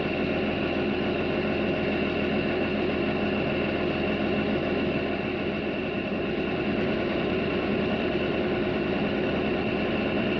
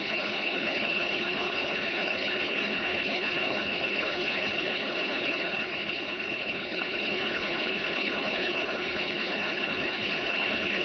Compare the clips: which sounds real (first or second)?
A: first